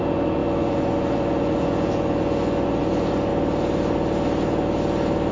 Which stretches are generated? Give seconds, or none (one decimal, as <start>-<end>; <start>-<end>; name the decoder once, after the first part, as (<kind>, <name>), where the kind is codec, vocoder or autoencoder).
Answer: 0.0-3.3 (vocoder, Vocos)